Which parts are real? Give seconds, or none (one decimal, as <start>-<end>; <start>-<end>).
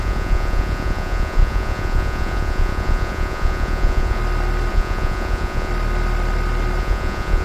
4.2-4.7; 5.7-6.8